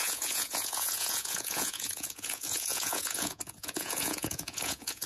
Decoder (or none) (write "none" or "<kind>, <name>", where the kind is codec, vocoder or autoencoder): vocoder, Vocos